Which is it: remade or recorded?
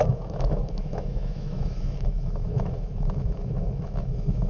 remade